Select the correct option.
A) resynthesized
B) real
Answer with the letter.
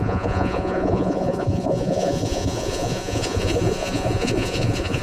A